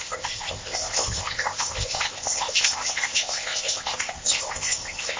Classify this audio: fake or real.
fake